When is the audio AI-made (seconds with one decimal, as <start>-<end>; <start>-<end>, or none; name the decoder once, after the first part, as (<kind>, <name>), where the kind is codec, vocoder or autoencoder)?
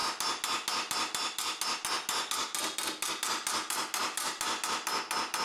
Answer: none